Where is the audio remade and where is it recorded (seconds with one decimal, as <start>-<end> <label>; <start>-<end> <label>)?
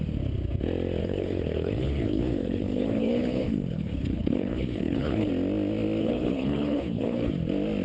0.0-1.0 recorded; 1.0-5.3 remade; 5.3-6.0 recorded; 6.0-7.3 remade; 7.3-7.8 recorded